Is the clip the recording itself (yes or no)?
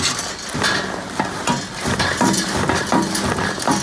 yes